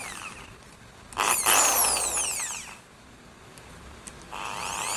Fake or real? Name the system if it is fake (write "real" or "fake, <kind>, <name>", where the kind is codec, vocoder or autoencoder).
real